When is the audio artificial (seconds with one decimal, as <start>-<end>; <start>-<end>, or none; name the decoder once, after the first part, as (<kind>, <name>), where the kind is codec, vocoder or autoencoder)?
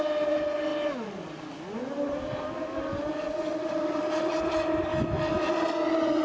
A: 4.9-5.5 (autoencoder, DAC-VAE)